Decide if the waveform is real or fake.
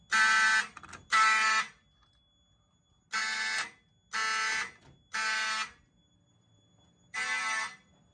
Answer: real